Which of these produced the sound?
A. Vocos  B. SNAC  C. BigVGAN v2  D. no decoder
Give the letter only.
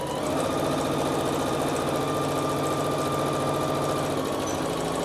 D